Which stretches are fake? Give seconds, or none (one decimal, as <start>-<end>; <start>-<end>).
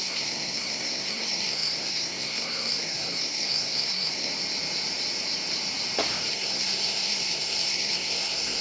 0.0-4.3; 6.3-8.6